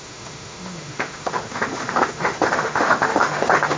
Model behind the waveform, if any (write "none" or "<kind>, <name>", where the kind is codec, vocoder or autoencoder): autoencoder, DAC-VAE